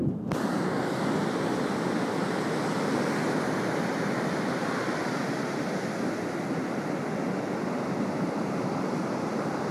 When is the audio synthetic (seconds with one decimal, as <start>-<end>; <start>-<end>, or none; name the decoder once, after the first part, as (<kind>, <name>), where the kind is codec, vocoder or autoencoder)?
none